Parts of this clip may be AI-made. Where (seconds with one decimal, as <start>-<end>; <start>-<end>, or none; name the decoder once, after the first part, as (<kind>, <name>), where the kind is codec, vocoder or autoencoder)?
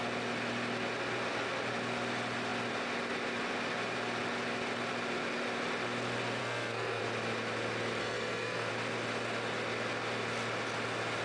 6.4-7.0 (codec, SNAC); 8.0-8.7